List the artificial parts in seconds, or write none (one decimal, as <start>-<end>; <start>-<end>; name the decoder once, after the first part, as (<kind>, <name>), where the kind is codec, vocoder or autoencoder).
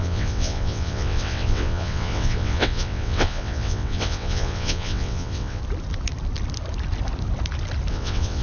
0.0-5.6 (vocoder, WaveNeXt); 7.9-8.4